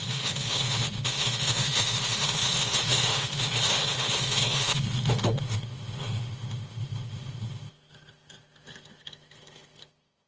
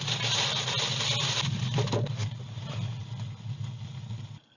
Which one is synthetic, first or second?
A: first